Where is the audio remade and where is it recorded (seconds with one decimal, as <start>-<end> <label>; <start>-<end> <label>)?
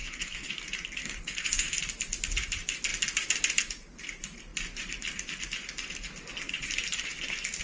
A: 0.0-0.5 remade; 0.5-1.0 recorded; 1.0-1.8 remade; 1.8-7.6 recorded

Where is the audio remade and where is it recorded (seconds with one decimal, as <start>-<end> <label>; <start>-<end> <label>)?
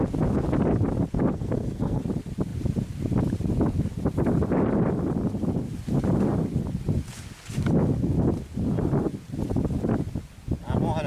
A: 0.0-1.3 recorded; 1.3-2.0 remade; 2.0-11.1 recorded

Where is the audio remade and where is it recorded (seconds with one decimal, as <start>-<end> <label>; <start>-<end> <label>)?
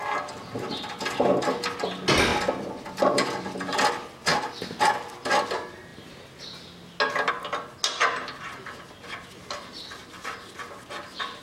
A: 0.0-11.4 recorded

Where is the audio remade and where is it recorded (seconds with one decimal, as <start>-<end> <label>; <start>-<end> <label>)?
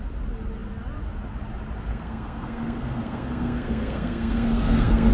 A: 0.0-1.9 recorded; 1.9-5.1 remade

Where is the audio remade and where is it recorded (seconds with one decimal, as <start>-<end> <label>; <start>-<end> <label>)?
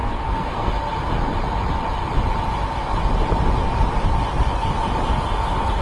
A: 0.0-0.7 remade; 0.7-5.8 recorded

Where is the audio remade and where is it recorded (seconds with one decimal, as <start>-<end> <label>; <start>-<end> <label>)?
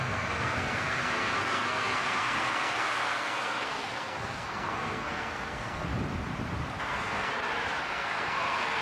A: 0.0-5.9 remade; 5.9-6.8 recorded; 6.8-7.3 remade; 7.3-7.9 recorded; 7.9-8.8 remade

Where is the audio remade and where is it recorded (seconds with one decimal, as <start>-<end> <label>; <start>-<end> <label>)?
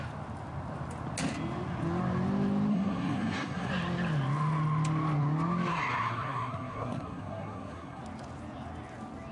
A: 0.0-2.7 recorded; 2.7-3.7 remade; 3.7-5.7 recorded; 5.7-8.0 remade; 8.0-9.3 recorded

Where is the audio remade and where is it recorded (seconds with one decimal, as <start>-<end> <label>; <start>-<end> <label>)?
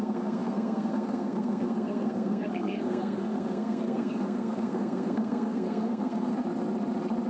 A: 0.0-6.3 remade; 6.3-7.3 recorded